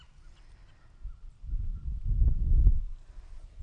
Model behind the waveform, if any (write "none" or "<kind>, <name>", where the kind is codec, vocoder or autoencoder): none